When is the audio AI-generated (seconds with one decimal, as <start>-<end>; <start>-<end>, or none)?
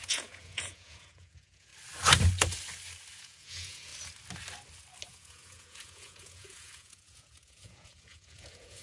0.0-1.7; 3.1-3.9; 5.1-8.8